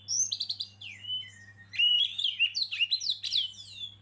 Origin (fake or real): real